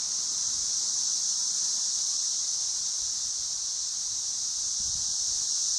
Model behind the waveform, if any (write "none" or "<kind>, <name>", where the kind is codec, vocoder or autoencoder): none